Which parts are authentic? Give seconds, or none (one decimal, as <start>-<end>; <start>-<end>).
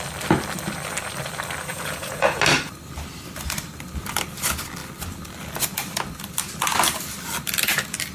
0.0-1.7; 2.4-8.1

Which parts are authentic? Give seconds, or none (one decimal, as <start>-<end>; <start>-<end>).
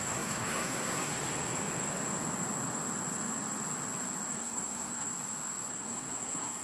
1.1-4.3; 5.1-5.7